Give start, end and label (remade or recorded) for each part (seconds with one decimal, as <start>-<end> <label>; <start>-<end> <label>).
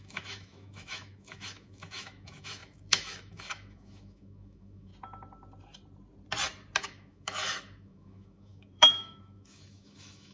0.0-4.9 remade; 4.9-6.8 recorded; 6.8-10.3 remade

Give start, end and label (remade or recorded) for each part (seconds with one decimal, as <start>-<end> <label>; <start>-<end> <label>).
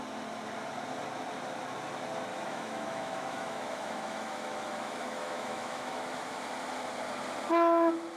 0.0-2.3 recorded; 2.3-6.4 remade; 6.4-8.2 recorded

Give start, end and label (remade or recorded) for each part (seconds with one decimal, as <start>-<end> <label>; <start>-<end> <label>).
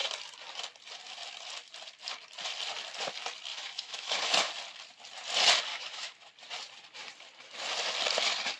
0.0-3.5 recorded; 3.5-4.5 remade; 4.5-5.7 recorded; 5.7-6.3 remade; 6.3-8.6 recorded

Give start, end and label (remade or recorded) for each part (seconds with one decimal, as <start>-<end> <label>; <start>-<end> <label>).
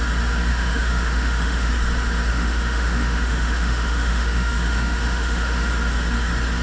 0.0-0.5 recorded; 0.5-1.7 remade; 1.7-2.3 recorded; 2.3-5.7 remade; 5.7-6.6 recorded